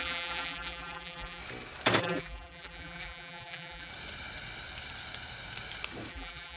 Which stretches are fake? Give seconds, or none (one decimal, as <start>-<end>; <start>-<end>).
0.0-1.4; 2.0-3.9; 6.1-6.6